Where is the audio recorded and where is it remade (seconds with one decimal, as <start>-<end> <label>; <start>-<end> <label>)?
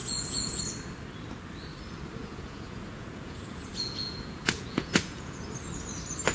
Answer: 0.0-0.6 remade; 0.6-2.2 recorded; 2.2-5.4 remade; 5.4-6.3 recorded